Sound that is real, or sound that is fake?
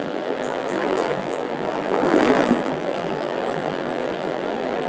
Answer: fake